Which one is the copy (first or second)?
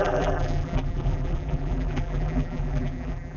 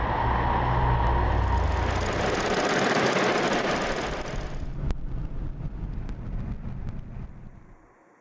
first